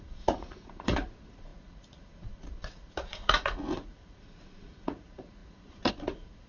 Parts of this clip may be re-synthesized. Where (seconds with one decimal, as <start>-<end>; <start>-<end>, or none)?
0.0-6.5